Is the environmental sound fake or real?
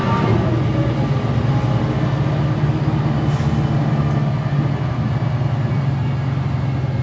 real